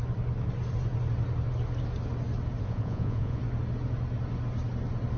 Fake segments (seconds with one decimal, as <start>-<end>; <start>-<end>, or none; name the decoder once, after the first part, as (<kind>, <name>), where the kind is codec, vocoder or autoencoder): 2.6-3.4 (vocoder, Vocos)

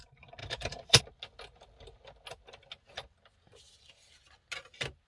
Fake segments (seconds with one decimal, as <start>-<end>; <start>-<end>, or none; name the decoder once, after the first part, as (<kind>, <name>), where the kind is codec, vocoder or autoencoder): 0.4-1.0 (vocoder, BigVGAN v2)

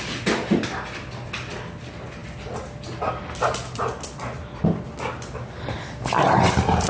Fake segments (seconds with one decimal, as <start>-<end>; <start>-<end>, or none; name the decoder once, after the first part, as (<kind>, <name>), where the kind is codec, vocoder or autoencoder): none

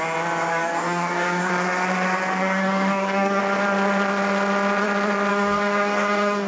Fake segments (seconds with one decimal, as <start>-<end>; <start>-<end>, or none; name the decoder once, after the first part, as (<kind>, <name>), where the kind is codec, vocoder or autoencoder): 0.5-1.5 (codec, DAC); 2.4-3.4; 5.3-6.5

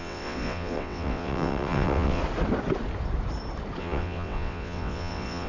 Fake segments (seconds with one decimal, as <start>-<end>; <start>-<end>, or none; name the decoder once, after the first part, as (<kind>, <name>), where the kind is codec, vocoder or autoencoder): 0.0-2.2 (vocoder, WaveNeXt); 3.8-5.5